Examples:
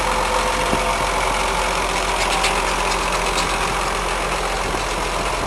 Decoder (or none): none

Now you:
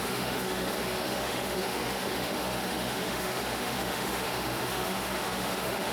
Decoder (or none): autoencoder, DAC-VAE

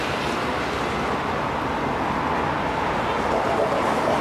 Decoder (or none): none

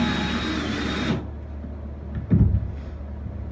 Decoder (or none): none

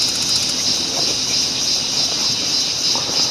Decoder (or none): none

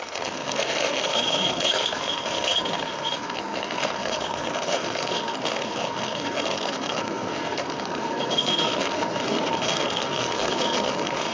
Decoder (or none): codec, SNAC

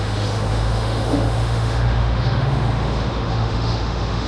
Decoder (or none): autoencoder, DAC-VAE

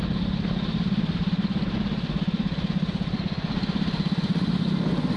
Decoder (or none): none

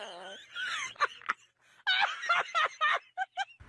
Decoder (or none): none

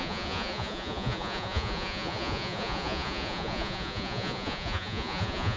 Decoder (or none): vocoder, Vocos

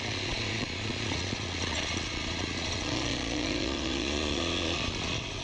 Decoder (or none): vocoder, Vocos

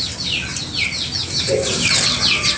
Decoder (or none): none